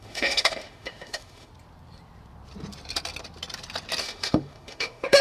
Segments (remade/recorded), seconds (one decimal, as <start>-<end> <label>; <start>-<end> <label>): 0.0-1.5 remade; 1.5-4.0 recorded; 4.0-5.2 remade

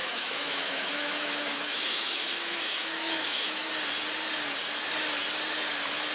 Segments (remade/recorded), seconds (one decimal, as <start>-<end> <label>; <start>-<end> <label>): 0.0-3.7 remade; 3.7-6.1 recorded

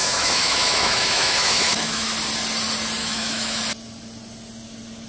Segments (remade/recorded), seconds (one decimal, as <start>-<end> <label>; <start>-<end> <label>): 0.0-2.1 remade; 2.1-3.0 recorded; 3.0-3.6 remade; 3.6-5.1 recorded

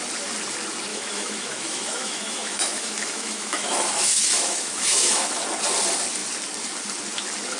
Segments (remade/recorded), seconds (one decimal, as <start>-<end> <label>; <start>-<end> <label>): 0.0-0.9 recorded; 0.9-5.3 remade; 5.3-7.6 recorded

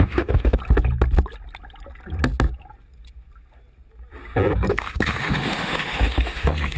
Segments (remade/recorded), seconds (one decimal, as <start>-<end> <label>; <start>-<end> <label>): 0.0-0.6 remade; 0.6-4.7 recorded; 4.7-6.8 remade

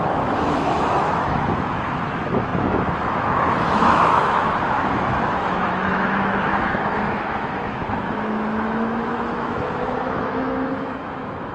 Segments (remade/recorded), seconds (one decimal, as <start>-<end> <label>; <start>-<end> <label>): 0.0-11.5 remade

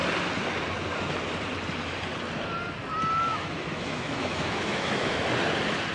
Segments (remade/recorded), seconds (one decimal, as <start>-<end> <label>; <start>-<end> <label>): 0.0-3.3 recorded; 3.3-5.3 remade; 5.3-5.9 recorded

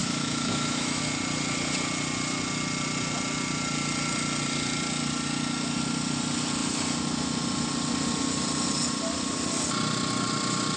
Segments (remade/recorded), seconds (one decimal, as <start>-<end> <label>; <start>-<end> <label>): 0.0-1.0 remade; 1.0-10.8 recorded